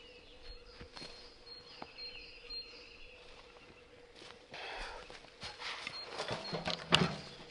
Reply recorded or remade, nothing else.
recorded